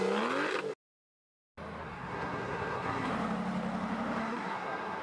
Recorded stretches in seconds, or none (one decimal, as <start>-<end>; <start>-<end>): 0.0-1.8; 3.1-4.2